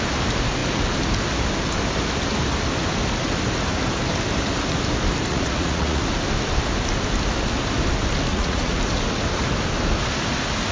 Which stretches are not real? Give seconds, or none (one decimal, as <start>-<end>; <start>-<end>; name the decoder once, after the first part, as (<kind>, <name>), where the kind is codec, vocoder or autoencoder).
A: 5.3-6.0 (vocoder, Vocos); 8.3-8.8

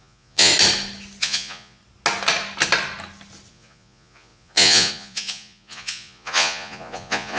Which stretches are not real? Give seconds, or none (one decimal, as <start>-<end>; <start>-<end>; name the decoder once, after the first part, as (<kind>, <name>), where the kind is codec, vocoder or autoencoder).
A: 0.0-0.5 (vocoder, Vocos); 1.2-1.8; 3.5-7.4

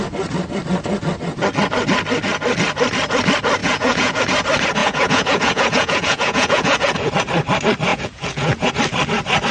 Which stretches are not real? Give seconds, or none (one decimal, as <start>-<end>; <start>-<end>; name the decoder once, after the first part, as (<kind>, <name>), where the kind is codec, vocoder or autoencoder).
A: 3.6-4.2 (vocoder, Vocos); 4.8-7.1; 7.9-8.7

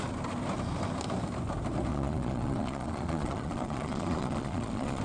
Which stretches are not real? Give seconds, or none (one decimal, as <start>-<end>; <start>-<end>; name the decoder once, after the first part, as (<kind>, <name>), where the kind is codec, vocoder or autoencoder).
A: 1.9-5.0 (vocoder, Vocos)

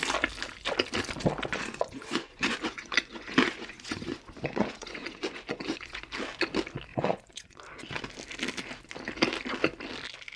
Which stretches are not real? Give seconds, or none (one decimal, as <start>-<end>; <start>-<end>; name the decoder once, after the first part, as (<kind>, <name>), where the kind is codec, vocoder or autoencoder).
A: 1.5-6.0 (vocoder, Vocos); 6.9-7.6

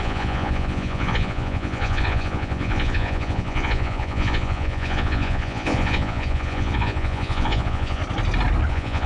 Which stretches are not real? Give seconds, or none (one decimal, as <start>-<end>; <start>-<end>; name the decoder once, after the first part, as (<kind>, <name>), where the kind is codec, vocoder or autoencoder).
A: 0.0-8.0 (vocoder, Vocos); 8.7-9.1

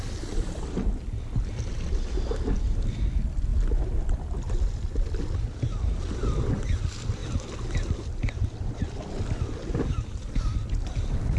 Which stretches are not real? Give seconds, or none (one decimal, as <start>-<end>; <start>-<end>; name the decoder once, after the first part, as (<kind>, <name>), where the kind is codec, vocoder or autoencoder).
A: none

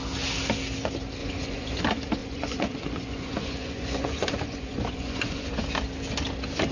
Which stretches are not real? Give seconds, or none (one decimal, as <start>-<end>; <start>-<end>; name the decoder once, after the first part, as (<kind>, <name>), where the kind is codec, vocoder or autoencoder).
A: 1.2-1.8 (vocoder, Vocos); 2.2-5.5